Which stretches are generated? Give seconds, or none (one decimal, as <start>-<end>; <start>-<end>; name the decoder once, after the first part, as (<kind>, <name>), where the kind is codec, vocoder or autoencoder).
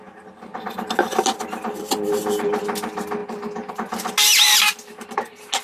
none